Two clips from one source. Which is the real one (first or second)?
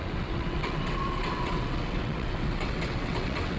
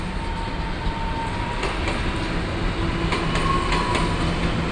second